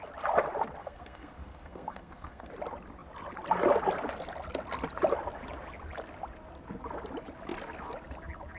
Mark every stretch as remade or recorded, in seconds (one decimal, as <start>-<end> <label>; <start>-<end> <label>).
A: 0.0-0.8 recorded; 0.8-2.5 remade; 2.5-8.6 recorded